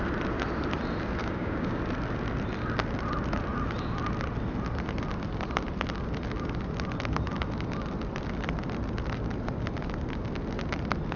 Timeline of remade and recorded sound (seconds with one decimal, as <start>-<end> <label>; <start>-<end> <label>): 0.0-1.2 recorded; 1.2-1.8 remade; 1.8-11.2 recorded